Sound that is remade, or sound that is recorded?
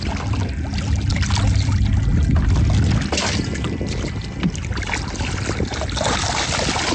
recorded